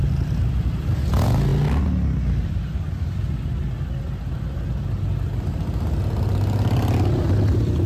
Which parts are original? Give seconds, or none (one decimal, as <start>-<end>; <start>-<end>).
0.0-7.9